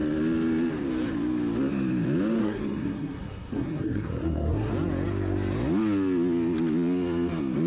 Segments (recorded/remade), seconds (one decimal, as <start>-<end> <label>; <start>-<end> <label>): 0.0-2.4 recorded; 2.4-4.7 remade; 4.7-7.7 recorded